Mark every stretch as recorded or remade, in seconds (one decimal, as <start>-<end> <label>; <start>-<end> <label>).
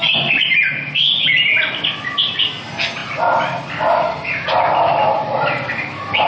0.0-6.3 recorded